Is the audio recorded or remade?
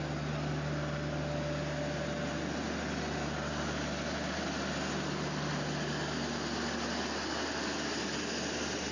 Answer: recorded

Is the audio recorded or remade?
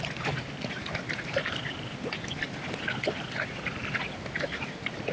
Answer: recorded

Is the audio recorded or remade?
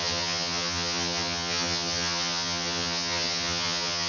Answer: remade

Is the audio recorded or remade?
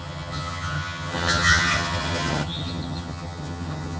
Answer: remade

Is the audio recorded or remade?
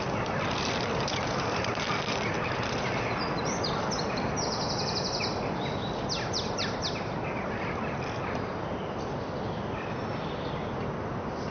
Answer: recorded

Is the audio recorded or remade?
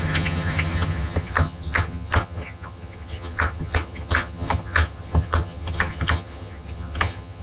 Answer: remade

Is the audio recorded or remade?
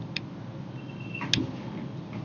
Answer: recorded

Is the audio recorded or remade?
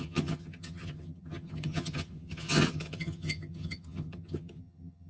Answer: remade